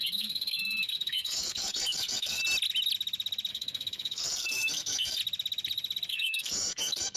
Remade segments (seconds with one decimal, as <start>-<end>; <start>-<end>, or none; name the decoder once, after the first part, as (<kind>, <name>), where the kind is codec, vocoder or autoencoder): 0.0-2.4 (codec, SNAC); 3.5-5.2; 6.1-7.2